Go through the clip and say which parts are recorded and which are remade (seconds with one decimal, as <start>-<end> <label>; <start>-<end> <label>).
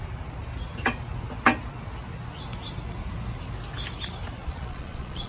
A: 0.0-4.4 recorded; 4.4-5.3 remade